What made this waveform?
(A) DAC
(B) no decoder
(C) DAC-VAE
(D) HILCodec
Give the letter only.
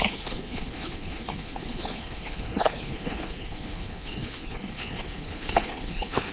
D